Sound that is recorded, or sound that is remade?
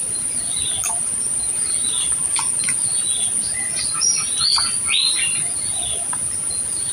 recorded